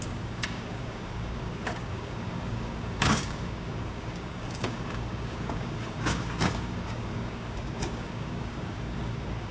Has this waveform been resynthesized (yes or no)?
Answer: yes